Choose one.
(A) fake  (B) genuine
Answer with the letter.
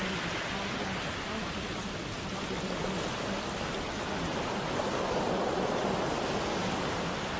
B